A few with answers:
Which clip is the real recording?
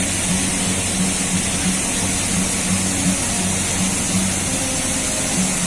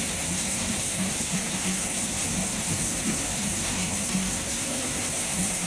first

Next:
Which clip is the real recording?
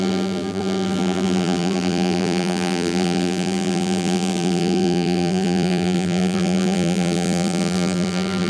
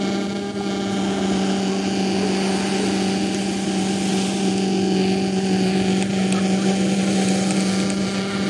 second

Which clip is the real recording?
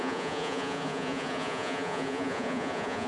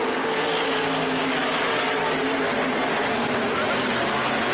second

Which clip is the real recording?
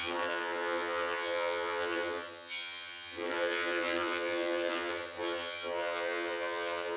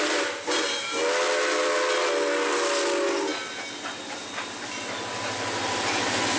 second